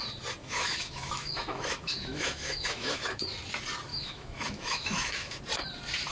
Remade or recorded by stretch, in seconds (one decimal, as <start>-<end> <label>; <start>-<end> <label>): 0.0-0.4 recorded; 0.4-3.2 remade; 3.2-3.9 recorded; 3.9-5.4 remade; 5.4-6.1 recorded